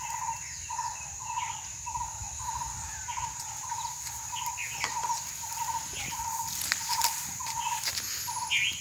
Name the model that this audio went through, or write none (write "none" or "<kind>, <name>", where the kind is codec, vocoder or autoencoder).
none